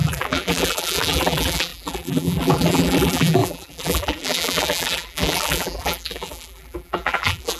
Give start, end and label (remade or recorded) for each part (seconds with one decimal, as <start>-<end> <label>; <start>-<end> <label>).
0.0-7.6 remade